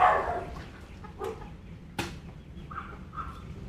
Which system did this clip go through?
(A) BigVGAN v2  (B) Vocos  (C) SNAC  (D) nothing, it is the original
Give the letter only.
D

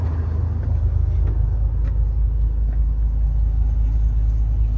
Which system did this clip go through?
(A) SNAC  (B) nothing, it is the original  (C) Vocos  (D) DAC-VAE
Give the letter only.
B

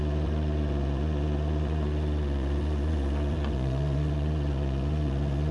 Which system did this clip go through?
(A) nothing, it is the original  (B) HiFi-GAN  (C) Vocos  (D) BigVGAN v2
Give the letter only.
C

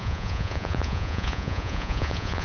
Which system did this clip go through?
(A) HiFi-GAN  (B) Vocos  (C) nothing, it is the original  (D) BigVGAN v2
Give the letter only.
B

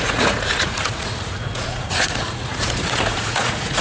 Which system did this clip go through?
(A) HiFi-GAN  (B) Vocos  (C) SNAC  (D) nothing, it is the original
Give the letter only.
B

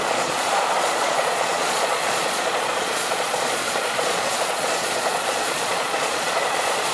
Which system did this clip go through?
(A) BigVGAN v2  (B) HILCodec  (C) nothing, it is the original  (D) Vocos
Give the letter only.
D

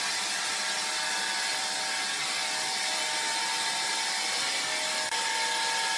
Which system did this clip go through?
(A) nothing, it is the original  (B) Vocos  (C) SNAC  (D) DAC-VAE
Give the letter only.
A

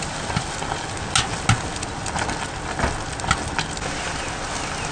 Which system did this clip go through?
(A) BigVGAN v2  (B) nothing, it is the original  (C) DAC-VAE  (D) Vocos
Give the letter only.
B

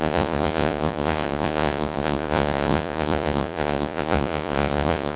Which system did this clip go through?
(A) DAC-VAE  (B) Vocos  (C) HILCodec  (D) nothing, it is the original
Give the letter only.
B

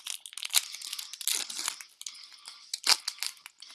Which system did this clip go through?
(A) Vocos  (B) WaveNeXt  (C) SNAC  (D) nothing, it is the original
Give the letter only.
D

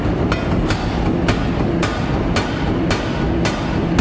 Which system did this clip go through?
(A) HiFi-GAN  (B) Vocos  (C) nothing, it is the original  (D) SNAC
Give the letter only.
C